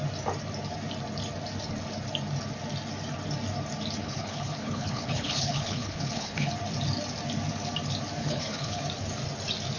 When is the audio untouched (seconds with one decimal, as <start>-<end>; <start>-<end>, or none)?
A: 0.0-4.0; 6.5-8.2; 8.8-9.8